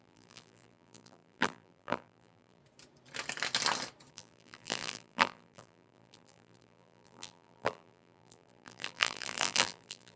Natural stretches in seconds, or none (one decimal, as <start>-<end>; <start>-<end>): 2.6-4.1